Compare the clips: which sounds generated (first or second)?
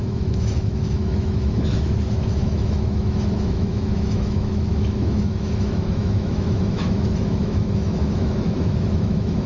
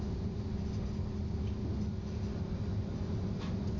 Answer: first